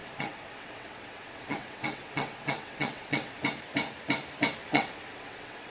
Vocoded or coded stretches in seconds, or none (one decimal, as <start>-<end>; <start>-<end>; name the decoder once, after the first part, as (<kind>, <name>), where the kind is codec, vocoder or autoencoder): 0.0-3.4 (vocoder, WaveNeXt); 4.7-5.7